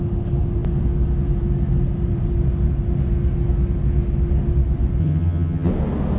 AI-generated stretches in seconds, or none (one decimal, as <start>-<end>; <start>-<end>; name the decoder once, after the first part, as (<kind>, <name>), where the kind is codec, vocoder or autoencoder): 5.0-5.7 (vocoder, HiFi-GAN)